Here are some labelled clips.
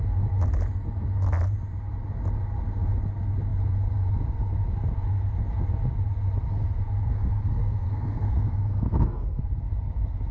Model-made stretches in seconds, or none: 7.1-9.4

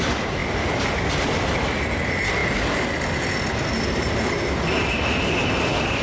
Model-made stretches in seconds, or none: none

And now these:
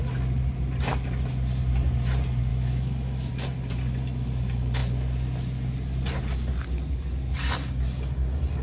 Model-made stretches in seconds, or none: 2.5-3.3

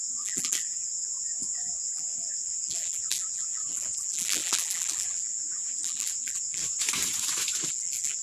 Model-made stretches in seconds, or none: 0.0-6.6; 7.7-8.2

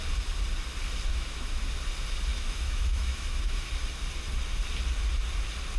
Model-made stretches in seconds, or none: 1.1-1.6; 2.3-3.7